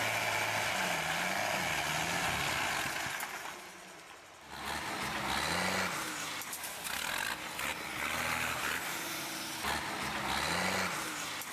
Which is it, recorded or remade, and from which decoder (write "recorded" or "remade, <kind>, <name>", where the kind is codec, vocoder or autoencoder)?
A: recorded